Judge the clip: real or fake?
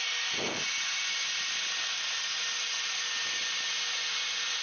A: real